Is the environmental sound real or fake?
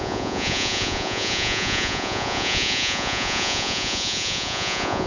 fake